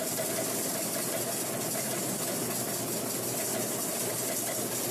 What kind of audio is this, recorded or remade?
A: recorded